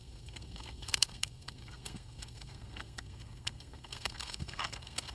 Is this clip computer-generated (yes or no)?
yes